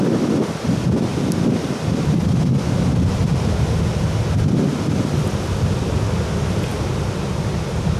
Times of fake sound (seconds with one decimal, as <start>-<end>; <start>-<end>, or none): none